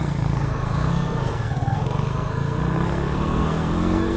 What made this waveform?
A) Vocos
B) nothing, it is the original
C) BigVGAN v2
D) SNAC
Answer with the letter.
D